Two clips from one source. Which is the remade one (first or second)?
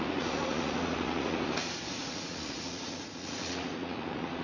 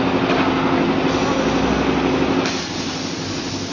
first